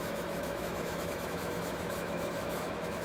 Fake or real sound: fake